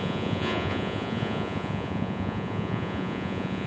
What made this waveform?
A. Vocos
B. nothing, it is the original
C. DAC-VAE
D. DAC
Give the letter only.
A